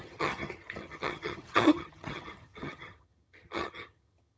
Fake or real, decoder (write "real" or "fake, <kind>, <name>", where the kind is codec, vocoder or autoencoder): fake, vocoder, HiFi-GAN